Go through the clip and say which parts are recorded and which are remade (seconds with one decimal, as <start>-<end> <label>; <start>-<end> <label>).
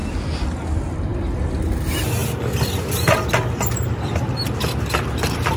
0.0-5.6 recorded